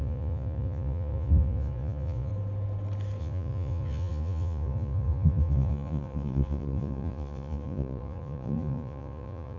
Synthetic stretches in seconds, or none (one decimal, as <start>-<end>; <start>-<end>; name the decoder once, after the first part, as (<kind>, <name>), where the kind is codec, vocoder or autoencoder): 0.0-2.3 (vocoder, Vocos); 3.2-9.6